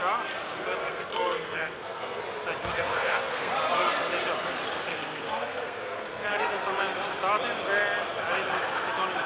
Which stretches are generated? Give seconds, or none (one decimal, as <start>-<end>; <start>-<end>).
0.8-2.2; 2.9-3.5; 4.9-6.3